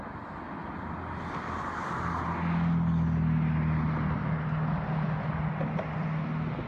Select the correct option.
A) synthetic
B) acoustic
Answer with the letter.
B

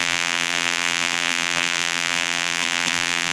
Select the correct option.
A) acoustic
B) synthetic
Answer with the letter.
B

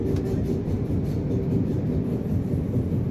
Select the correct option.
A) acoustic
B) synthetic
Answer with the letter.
A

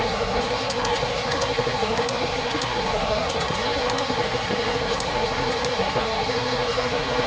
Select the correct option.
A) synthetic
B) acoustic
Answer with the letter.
A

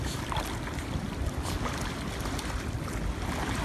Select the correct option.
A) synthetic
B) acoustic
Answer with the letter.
B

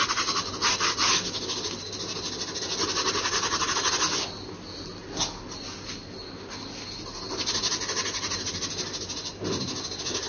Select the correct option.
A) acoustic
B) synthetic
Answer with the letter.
A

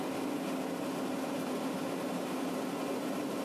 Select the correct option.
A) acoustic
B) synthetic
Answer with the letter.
A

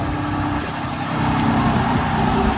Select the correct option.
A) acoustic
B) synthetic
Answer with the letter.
A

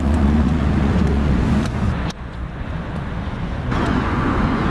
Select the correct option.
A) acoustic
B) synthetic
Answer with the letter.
B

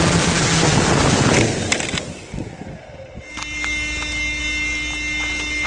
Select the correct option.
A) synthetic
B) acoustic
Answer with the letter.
B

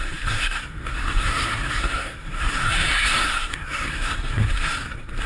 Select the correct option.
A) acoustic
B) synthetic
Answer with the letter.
B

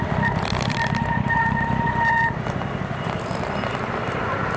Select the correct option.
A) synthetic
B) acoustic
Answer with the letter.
A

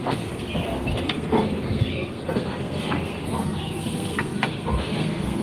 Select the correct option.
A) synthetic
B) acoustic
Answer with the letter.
A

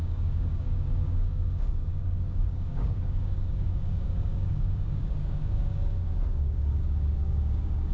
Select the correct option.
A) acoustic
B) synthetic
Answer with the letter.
B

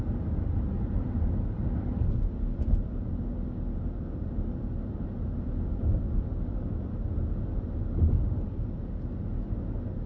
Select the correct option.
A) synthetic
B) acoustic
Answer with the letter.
B